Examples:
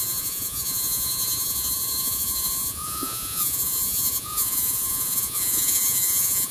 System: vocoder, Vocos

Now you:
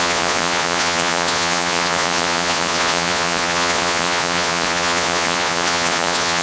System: vocoder, Vocos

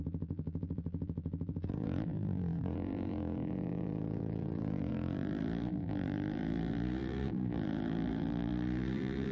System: vocoder, BigVGAN v2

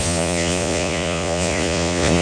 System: vocoder, Vocos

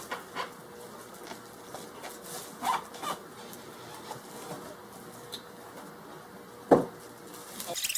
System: none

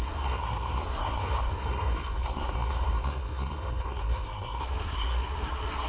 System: codec, SNAC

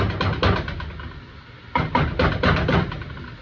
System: none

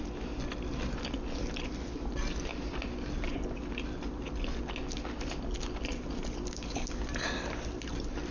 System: none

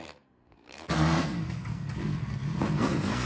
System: codec, SNAC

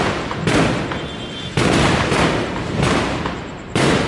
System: none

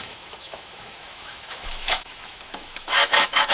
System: autoencoder, DAC-VAE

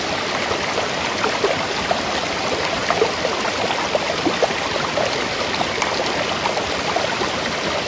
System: vocoder, BigVGAN v2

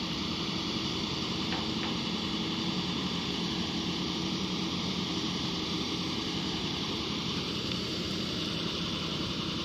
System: vocoder, BigVGAN v2